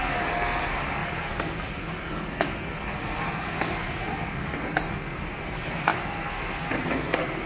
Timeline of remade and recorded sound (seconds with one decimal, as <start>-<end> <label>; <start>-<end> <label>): 0.0-7.5 remade